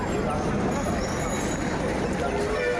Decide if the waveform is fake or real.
real